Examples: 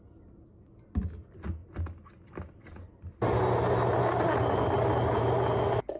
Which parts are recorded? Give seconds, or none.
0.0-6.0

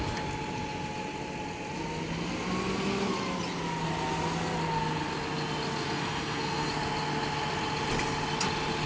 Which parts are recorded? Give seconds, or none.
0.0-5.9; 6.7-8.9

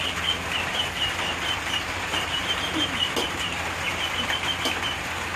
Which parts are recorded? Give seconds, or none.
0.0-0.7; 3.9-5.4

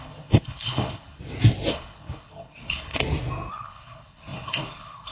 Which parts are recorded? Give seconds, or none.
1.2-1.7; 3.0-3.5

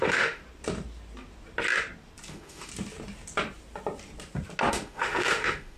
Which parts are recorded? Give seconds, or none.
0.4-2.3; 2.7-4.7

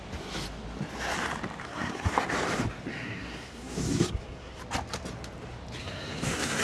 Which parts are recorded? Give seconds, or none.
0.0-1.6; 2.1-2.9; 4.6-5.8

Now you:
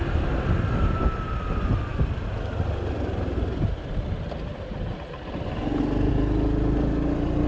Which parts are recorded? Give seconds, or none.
0.0-7.5

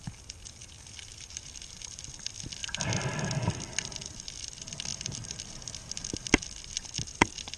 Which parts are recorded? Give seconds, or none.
0.0-0.6; 2.1-2.6; 3.5-4.9; 6.0-7.6